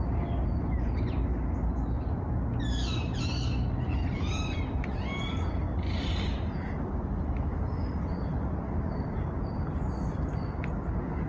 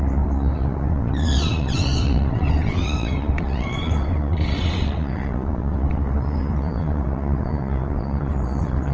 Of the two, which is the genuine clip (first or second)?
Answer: first